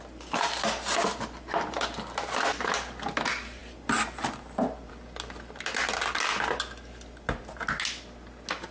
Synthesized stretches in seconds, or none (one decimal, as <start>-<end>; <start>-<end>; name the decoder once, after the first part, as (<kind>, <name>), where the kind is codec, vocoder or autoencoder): none